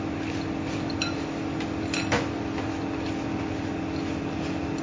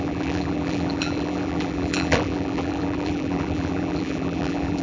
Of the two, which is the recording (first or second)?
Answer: first